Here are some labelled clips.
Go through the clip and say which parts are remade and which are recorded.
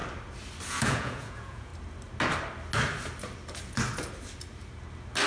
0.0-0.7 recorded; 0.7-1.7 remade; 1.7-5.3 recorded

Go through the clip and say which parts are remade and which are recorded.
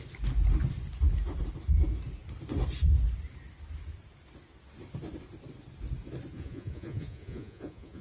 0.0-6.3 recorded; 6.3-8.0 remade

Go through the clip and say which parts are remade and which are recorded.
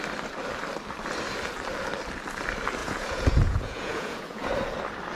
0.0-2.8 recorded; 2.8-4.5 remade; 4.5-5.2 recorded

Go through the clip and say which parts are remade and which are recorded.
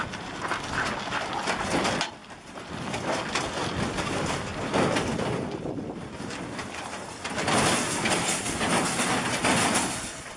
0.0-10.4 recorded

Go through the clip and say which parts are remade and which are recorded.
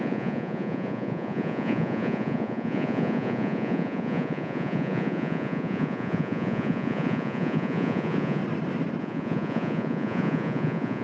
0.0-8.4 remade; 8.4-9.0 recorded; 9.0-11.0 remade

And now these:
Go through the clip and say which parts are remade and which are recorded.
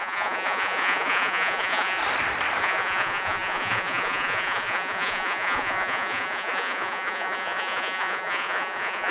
0.0-2.0 remade; 2.0-2.6 recorded; 2.6-9.1 remade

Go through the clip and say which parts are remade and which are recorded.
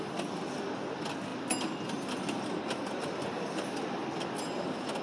0.0-5.0 recorded